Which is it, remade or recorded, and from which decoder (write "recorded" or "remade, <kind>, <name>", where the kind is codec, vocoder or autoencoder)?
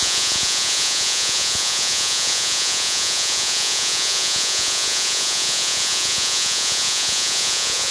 remade, vocoder, Vocos